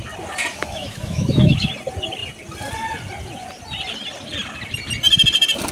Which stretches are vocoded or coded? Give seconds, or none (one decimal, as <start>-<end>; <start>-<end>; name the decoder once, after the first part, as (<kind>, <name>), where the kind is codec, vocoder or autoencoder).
0.5-1.7 (autoencoder, DAC-VAE)